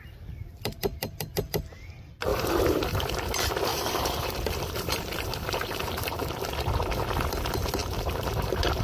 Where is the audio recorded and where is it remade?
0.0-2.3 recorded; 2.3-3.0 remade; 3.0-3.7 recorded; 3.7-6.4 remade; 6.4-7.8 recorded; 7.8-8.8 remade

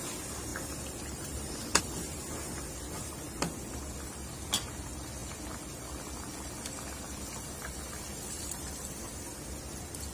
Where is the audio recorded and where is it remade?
0.0-0.5 recorded; 0.5-1.8 remade; 1.8-8.1 recorded; 8.1-9.4 remade; 9.4-10.1 recorded

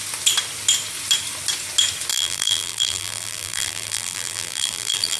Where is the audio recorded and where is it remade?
0.0-2.1 recorded; 2.1-5.2 remade

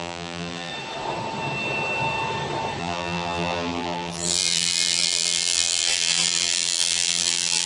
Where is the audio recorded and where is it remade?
0.0-0.7 remade; 0.7-2.8 recorded; 2.8-7.7 remade